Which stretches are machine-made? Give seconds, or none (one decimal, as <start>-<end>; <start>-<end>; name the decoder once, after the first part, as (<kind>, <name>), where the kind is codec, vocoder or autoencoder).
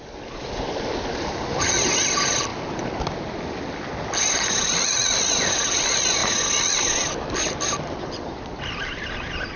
0.0-2.5 (vocoder, BigVGAN v2); 4.6-6.2; 6.8-9.6